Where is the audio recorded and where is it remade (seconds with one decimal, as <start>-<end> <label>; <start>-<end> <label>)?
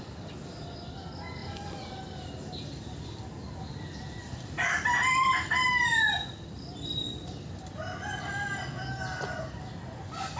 0.0-1.4 recorded; 1.4-3.0 remade; 3.0-4.2 recorded; 4.2-7.8 remade; 7.8-10.4 recorded